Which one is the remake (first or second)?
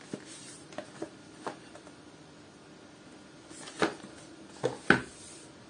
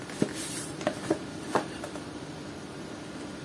second